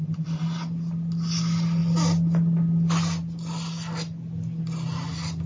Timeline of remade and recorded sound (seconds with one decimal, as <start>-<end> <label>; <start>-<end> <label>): 0.0-5.5 recorded